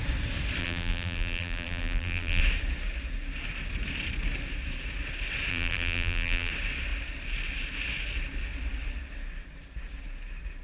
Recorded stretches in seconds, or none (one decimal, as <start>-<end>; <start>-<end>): 0.0-0.6; 2.4-5.5; 6.5-10.6